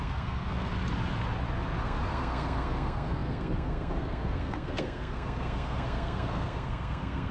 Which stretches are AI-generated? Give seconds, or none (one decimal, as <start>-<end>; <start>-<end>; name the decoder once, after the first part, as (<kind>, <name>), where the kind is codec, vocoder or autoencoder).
0.0-0.7 (codec, SNAC); 1.8-7.3